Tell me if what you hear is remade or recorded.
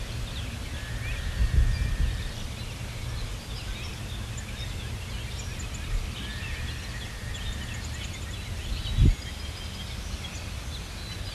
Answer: recorded